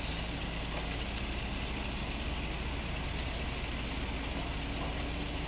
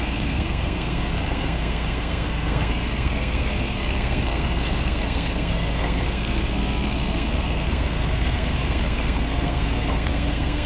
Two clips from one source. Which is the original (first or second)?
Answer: first